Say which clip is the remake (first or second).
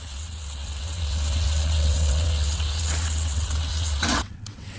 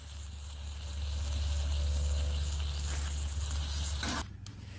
first